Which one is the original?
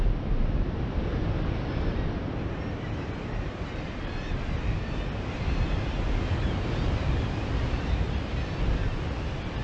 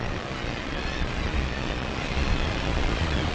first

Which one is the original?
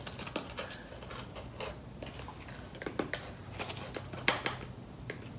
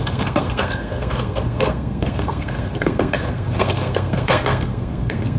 first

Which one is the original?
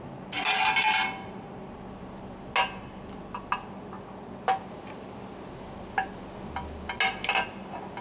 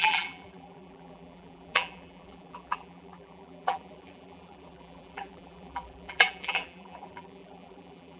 first